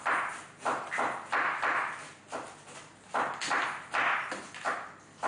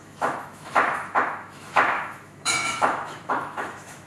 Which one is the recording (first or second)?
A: first